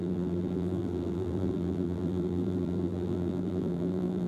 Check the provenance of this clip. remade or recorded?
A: remade